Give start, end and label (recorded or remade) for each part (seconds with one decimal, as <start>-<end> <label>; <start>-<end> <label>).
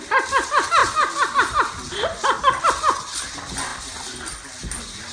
0.0-5.1 recorded